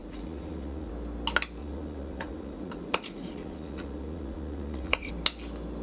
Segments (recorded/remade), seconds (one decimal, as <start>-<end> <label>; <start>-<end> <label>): 0.0-0.9 remade; 0.9-1.6 recorded; 1.6-5.1 remade; 5.1-5.8 recorded